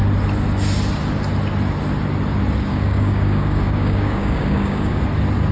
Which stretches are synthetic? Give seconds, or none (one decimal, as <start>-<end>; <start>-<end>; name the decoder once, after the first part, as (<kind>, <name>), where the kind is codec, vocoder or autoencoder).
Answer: 2.7-5.0 (codec, DAC)